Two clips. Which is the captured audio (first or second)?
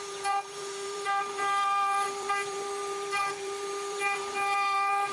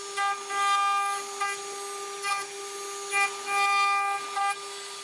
second